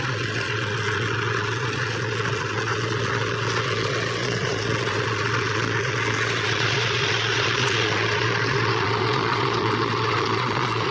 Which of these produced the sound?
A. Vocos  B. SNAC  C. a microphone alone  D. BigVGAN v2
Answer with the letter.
A